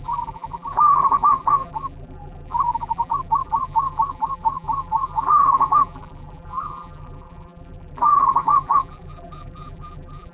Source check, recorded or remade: remade